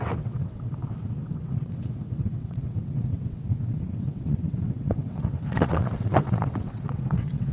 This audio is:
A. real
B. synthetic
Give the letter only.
B